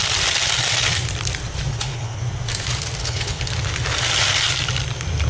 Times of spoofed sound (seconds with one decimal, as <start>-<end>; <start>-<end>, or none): 1.7-2.2; 3.0-3.5